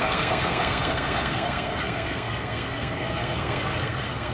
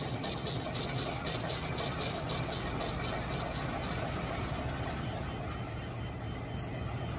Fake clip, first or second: first